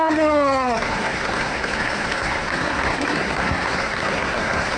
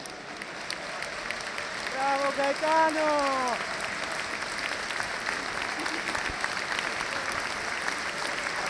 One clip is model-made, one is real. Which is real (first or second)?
second